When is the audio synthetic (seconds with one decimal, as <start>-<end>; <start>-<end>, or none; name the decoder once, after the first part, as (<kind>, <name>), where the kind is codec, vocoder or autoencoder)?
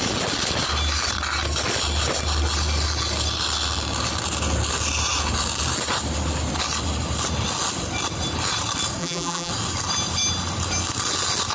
9.0-9.5 (vocoder, BigVGAN v2)